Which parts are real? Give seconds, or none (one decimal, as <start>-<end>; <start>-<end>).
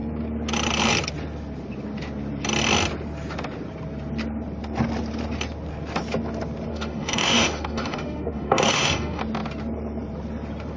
0.0-6.7; 9.2-10.8